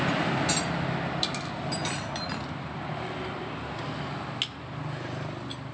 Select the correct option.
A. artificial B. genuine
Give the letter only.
B